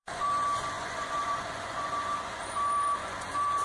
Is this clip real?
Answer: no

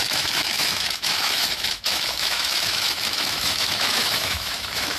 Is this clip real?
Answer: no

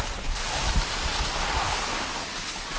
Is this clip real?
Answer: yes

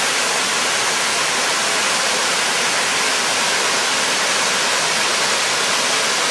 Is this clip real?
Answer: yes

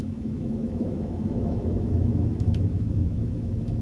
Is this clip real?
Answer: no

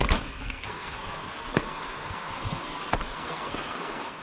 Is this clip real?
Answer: no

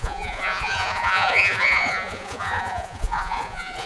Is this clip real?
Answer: no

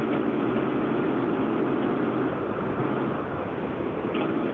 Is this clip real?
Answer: yes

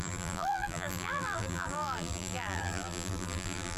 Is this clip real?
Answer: no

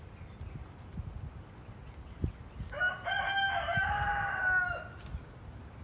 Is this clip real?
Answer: yes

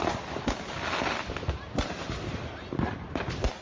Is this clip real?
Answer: yes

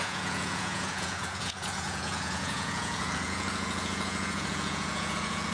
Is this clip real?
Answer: no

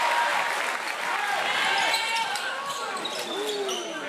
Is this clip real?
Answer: yes